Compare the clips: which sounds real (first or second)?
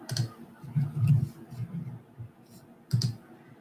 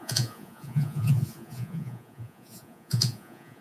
first